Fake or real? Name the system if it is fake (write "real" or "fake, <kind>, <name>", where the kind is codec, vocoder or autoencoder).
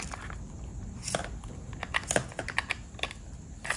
real